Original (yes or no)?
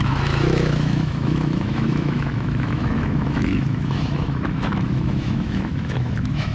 no